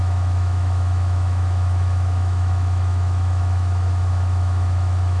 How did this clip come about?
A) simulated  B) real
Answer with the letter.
A